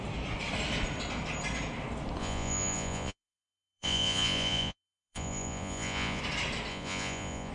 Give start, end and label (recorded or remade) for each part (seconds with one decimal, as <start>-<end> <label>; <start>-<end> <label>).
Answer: 0.0-2.2 recorded; 2.2-6.2 remade; 6.2-6.7 recorded; 6.7-7.5 remade